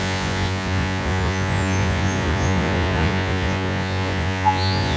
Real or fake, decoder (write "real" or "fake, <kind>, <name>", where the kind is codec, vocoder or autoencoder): fake, vocoder, Vocos